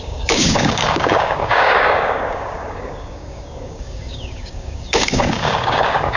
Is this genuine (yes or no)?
no